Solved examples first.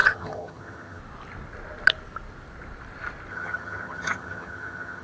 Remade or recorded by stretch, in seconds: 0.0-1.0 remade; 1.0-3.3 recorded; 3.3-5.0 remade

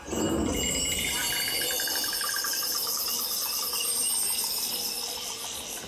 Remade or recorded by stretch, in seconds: 0.0-5.9 recorded

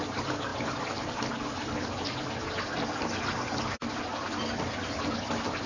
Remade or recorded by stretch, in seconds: 0.0-5.7 recorded

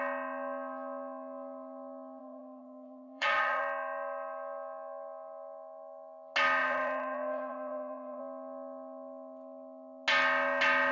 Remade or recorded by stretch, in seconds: 0.0-2.2 recorded; 2.2-3.6 remade; 3.6-6.6 recorded; 6.6-8.2 remade; 8.2-10.9 recorded

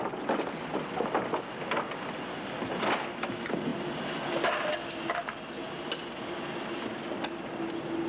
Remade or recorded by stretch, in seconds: 0.0-8.1 recorded

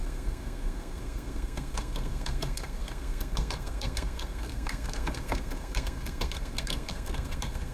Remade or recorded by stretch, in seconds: 0.0-7.7 remade

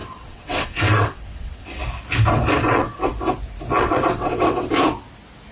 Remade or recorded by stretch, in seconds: 0.0-1.8 remade; 1.8-2.6 recorded; 2.6-3.1 remade; 3.1-3.8 recorded; 3.8-4.7 remade; 4.7-5.5 recorded

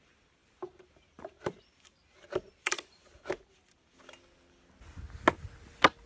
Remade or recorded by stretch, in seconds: 0.0-0.4 recorded; 0.4-3.4 remade; 3.4-6.1 recorded